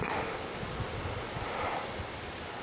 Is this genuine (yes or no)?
yes